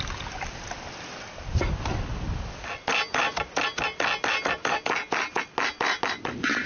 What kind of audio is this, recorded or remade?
recorded